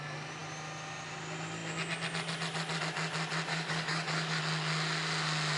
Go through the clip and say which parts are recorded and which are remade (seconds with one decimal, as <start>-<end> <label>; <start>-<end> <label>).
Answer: 0.0-3.5 recorded; 3.5-4.4 remade; 4.4-5.6 recorded